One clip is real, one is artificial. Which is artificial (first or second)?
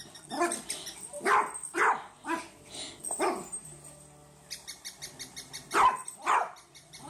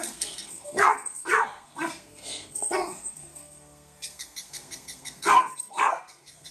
second